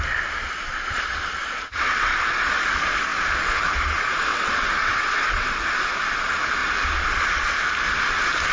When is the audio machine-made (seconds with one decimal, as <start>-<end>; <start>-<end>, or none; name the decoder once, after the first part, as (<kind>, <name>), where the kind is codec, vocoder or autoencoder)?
1.4-2.5 (vocoder, WaveNeXt); 4.3-5.8